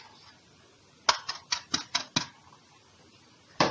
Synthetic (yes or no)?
no